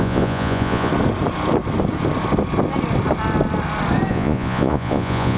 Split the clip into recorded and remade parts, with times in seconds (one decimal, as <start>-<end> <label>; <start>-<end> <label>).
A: 0.0-0.9 remade; 0.9-4.1 recorded; 4.1-5.4 remade